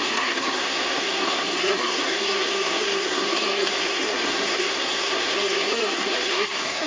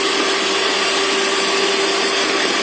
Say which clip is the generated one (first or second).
first